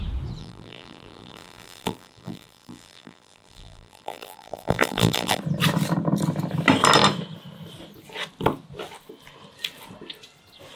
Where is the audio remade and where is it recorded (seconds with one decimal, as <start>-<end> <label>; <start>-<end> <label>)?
0.0-0.4 recorded; 0.4-5.4 remade; 5.4-10.8 recorded

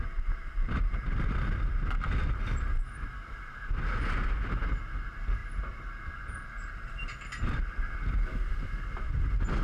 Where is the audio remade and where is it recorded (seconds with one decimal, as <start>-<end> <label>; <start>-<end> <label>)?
0.0-9.6 recorded